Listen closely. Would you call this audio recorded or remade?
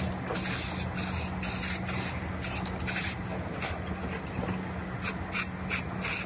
recorded